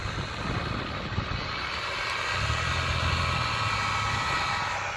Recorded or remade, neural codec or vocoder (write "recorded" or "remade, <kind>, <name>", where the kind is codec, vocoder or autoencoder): recorded